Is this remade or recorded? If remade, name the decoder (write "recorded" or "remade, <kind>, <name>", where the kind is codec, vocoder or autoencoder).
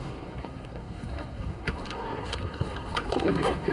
remade, codec, SNAC